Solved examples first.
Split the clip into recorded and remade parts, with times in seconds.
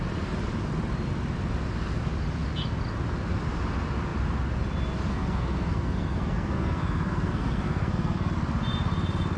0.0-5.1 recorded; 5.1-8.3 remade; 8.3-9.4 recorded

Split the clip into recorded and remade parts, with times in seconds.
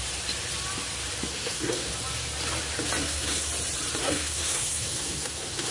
0.0-1.3 recorded; 1.3-1.9 remade; 1.9-3.0 recorded; 3.0-3.5 remade; 3.5-4.0 recorded; 4.0-5.7 remade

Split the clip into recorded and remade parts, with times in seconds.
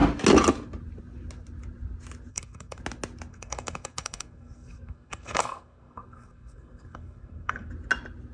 0.0-2.3 recorded; 2.3-2.8 remade; 2.8-3.3 recorded; 3.3-7.7 remade; 7.7-8.3 recorded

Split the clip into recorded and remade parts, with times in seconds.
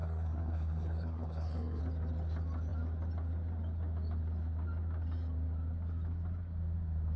0.0-1.8 remade; 1.8-7.2 recorded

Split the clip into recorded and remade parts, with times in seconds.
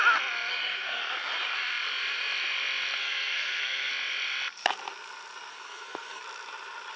0.0-0.5 recorded; 0.5-1.0 remade; 1.0-3.0 recorded; 3.0-3.9 remade; 3.9-5.5 recorded; 5.5-6.2 remade; 6.2-7.0 recorded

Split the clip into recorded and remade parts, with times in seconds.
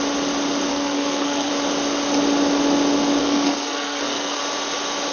0.0-0.7 recorded; 0.7-1.5 remade; 1.5-3.2 recorded; 3.2-4.4 remade; 4.4-5.1 recorded